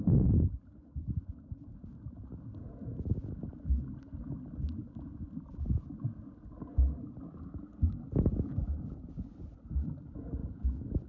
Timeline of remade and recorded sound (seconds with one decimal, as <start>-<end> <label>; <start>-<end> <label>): 0.0-10.4 recorded; 10.4-11.1 remade